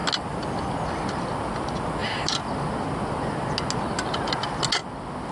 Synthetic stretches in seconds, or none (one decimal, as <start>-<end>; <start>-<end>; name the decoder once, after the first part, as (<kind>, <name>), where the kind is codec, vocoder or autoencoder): none